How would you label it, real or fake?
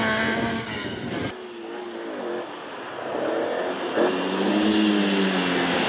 real